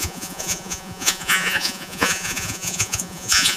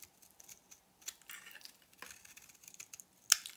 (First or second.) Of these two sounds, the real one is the second